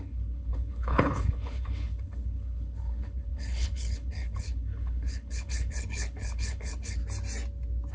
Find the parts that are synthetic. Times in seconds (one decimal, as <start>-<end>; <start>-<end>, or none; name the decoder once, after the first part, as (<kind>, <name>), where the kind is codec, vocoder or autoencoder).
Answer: 0.0-7.0 (codec, HILCodec)

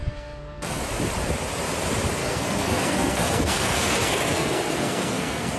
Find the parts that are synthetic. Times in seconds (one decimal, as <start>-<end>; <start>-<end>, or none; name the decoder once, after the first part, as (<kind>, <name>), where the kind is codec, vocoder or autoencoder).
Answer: 0.0-0.8 (codec, SNAC); 2.2-5.6

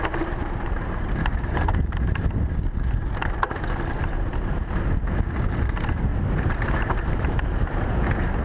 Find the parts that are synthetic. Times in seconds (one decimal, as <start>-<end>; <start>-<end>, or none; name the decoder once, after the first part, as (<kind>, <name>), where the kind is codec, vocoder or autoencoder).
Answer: 0.4-1.8 (vocoder, BigVGAN v2); 6.1-7.9

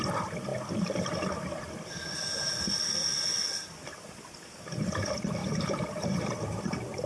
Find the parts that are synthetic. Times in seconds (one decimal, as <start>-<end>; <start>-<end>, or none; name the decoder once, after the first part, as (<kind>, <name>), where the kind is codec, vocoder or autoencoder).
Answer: 5.4-6.2 (vocoder, BigVGAN v2)

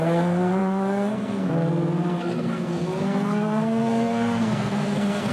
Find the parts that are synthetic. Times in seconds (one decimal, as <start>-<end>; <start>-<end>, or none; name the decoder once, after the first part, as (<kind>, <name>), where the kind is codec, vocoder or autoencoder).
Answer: 0.0-5.3 (codec, SNAC)

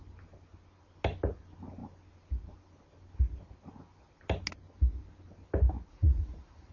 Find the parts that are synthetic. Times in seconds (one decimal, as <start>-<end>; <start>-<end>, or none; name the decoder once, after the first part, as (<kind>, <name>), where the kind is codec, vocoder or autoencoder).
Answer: 5.9-6.7 (vocoder, Vocos)

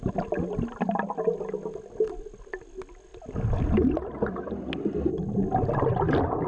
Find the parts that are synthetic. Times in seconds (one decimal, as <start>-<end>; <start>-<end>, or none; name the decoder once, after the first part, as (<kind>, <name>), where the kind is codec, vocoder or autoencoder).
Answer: none

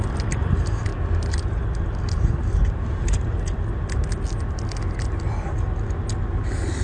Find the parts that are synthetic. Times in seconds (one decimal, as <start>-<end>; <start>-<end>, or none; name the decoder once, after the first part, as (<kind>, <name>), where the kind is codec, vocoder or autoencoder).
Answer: none